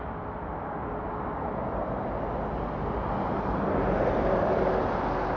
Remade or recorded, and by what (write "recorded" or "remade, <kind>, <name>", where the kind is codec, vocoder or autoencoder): recorded